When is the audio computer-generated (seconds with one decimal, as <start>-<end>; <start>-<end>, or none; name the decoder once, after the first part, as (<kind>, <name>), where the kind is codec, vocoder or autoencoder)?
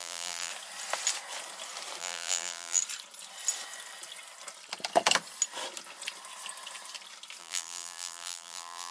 0.0-0.5 (vocoder, BigVGAN v2); 2.0-2.8; 7.4-8.9